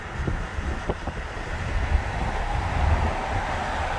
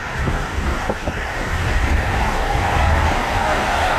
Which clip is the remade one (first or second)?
second